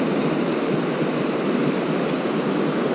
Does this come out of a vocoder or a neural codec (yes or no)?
no